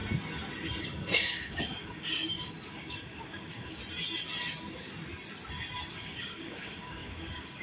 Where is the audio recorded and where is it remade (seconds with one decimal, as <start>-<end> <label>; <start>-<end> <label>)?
0.0-0.8 recorded; 0.8-3.8 remade; 3.8-5.9 recorded; 5.9-7.6 remade